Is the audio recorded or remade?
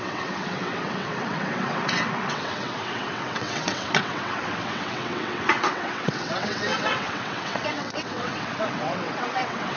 remade